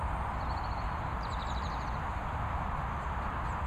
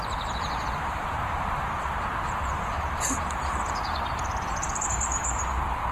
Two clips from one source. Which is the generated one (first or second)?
second